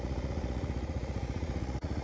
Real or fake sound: fake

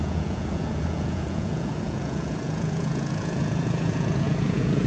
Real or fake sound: fake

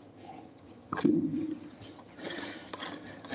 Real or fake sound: fake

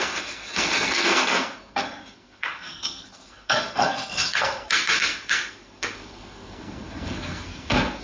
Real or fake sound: fake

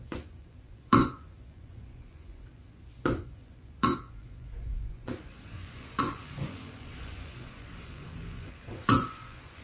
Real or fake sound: fake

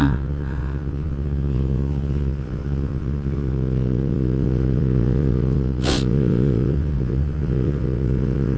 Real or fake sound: fake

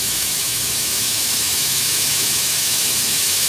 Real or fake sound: fake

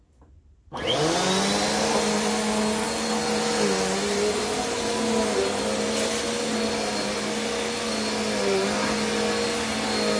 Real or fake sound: real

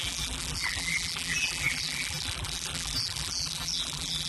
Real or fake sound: fake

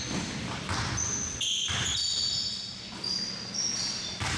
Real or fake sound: real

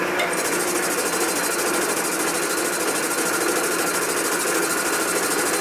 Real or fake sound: real